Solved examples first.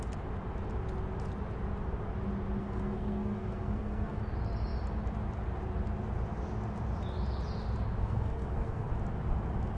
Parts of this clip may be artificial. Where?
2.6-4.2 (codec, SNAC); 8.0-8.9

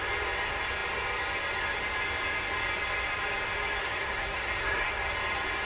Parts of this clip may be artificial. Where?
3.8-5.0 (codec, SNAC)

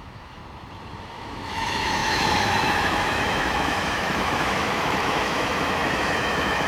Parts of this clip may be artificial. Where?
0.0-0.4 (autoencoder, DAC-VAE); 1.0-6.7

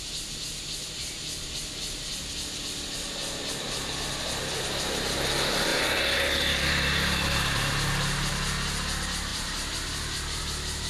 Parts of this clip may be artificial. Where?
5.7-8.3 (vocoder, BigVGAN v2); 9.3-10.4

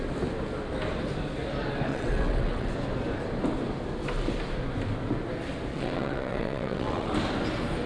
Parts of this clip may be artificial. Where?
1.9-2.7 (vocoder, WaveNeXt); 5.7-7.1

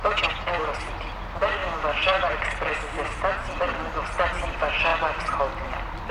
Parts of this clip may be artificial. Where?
1.6-3.6 (vocoder, BigVGAN v2); 4.9-6.1

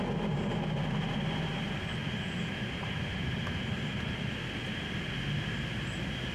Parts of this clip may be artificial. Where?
2.0-4.3 (vocoder, BigVGAN v2)